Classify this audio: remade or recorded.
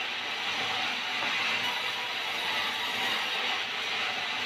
recorded